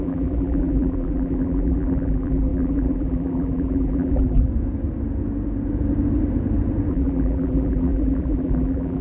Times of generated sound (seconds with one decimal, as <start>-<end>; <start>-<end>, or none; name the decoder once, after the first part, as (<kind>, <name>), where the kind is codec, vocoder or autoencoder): 0.0-4.5 (vocoder, BigVGAN v2); 6.9-9.0